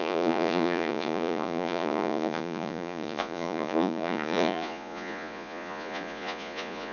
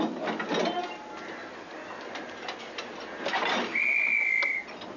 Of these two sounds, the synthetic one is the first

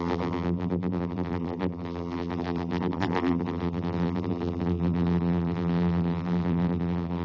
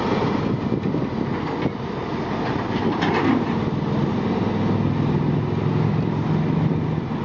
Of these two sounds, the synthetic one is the first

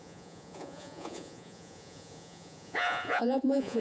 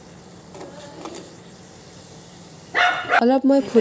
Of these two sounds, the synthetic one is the first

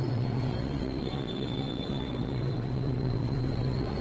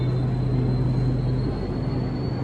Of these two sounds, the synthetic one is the first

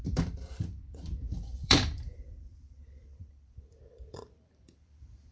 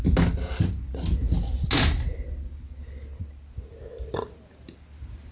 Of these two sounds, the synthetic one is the first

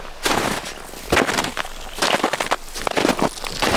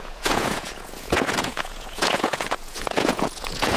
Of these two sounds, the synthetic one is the second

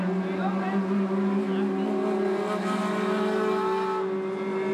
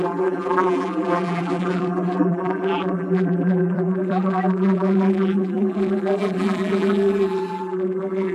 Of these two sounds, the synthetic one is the second